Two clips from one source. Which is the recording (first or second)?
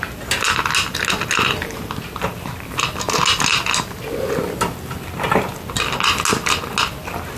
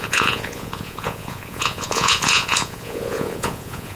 first